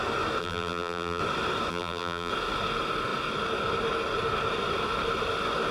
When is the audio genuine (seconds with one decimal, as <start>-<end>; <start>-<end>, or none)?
0.0-0.4; 1.2-1.7; 2.3-5.7